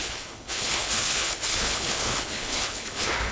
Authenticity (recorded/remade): remade